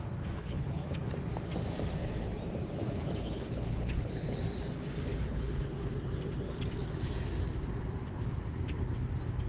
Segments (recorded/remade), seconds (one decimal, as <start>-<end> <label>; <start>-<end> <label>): 0.0-0.4 recorded; 0.4-1.1 remade; 1.1-2.8 recorded; 2.8-4.4 remade; 4.4-5.1 recorded; 5.1-5.9 remade; 5.9-9.5 recorded